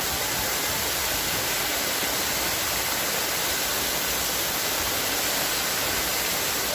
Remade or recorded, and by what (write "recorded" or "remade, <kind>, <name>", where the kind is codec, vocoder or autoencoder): recorded